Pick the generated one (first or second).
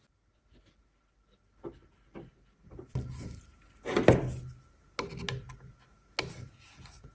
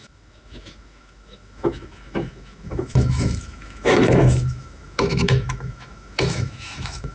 second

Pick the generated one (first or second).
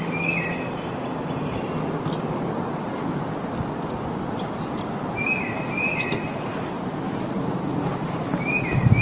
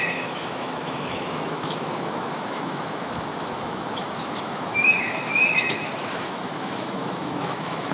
second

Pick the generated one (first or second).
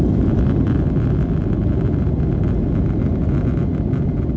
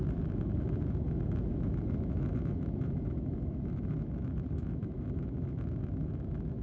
second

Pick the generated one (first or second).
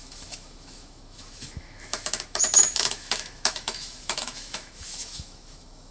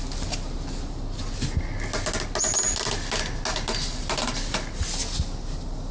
first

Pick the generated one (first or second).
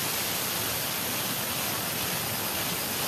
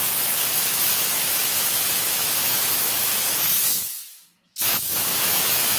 second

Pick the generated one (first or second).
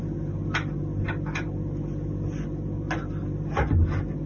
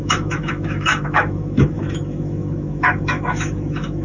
second